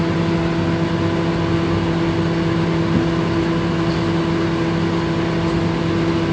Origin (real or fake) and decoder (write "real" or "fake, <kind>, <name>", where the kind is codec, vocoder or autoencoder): real